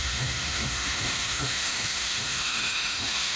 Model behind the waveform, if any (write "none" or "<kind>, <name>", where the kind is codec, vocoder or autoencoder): autoencoder, DAC-VAE